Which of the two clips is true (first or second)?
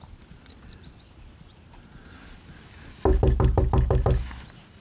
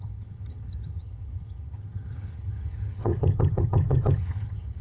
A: first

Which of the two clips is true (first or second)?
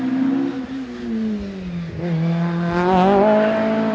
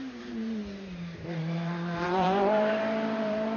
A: first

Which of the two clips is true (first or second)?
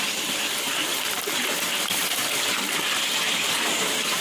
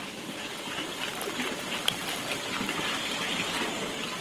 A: first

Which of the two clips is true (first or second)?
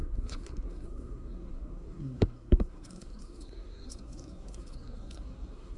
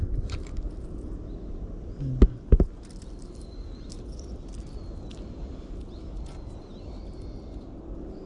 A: second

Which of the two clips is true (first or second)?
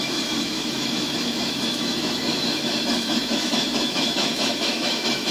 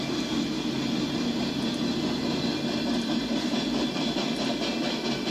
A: second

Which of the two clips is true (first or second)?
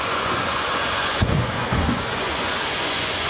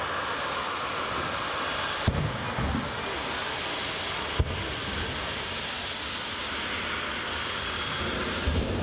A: second